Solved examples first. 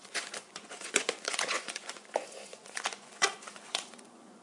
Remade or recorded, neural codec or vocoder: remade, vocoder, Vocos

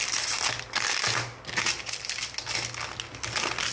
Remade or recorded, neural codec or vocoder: recorded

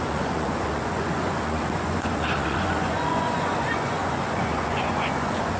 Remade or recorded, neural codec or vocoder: remade, vocoder, Vocos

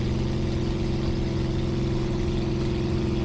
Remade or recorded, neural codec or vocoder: recorded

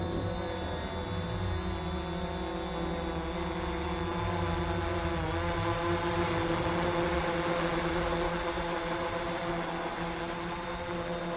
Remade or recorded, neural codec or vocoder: recorded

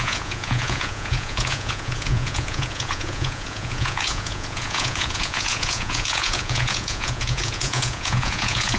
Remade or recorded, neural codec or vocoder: remade, vocoder, Vocos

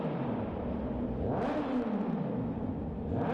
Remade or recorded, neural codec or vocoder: recorded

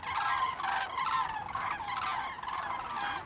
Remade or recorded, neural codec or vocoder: recorded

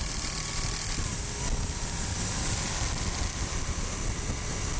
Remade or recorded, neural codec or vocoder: recorded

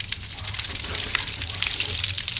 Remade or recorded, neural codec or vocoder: recorded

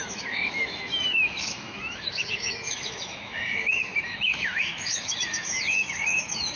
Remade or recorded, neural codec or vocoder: remade, autoencoder, DAC-VAE